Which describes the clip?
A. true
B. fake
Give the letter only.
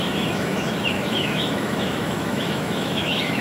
B